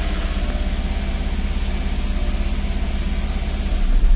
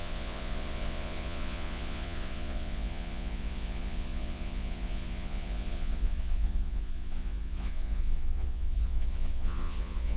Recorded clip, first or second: first